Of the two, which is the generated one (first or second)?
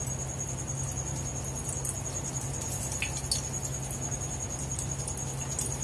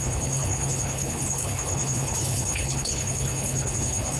second